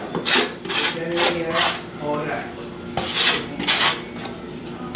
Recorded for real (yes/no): yes